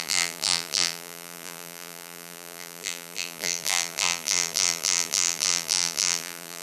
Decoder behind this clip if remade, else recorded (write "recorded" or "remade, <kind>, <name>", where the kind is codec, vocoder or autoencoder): remade, vocoder, BigVGAN v2